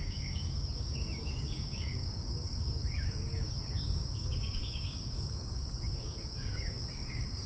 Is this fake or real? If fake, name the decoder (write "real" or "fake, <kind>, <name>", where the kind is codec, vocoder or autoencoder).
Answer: fake, codec, DAC